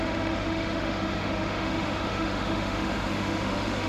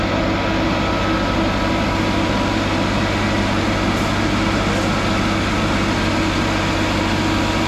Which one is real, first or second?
second